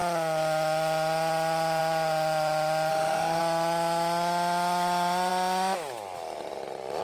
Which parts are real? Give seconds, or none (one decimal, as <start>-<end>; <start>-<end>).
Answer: 0.0-2.9; 3.4-7.0